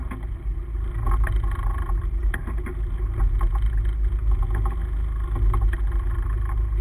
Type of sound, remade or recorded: recorded